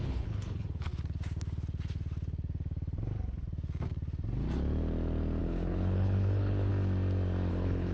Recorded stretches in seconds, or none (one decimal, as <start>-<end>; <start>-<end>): 0.9-5.4; 6.7-7.5